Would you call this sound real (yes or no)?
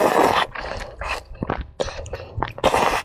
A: yes